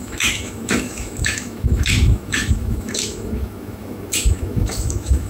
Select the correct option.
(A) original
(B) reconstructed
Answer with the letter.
B